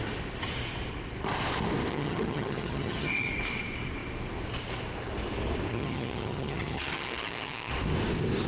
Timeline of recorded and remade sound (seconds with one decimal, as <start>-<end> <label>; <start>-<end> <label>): 0.0-1.9 recorded; 1.9-3.3 remade; 3.3-5.7 recorded; 5.7-7.7 remade; 7.7-8.5 recorded